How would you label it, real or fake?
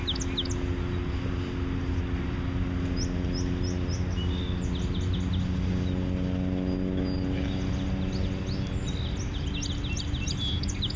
real